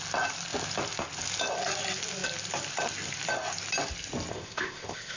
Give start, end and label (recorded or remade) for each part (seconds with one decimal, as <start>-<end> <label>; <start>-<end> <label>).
0.0-4.3 recorded; 4.3-5.2 remade